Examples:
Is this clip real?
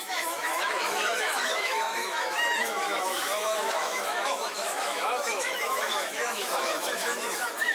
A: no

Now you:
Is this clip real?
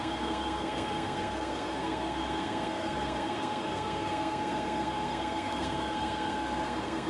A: no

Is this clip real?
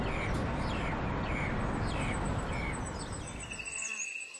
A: yes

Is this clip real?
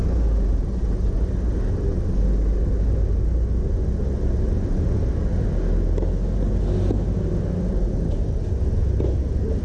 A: yes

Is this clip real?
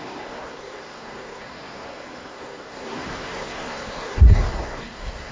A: no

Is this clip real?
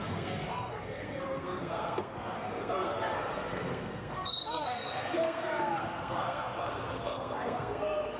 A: no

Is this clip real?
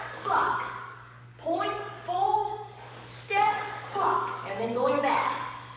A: no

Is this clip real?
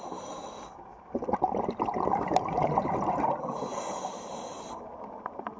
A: yes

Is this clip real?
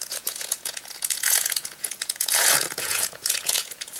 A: no